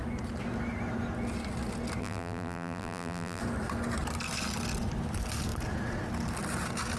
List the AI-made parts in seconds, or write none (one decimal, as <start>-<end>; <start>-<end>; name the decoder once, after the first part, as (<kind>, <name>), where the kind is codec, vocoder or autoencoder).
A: 2.0-3.4 (vocoder, BigVGAN v2)